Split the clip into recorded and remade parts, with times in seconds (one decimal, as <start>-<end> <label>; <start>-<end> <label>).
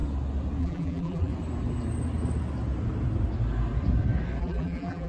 0.0-0.6 recorded; 0.6-1.3 remade; 1.3-4.4 recorded; 4.4-5.1 remade